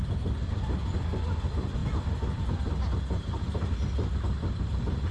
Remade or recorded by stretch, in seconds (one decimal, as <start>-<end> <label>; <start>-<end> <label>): 0.0-5.1 recorded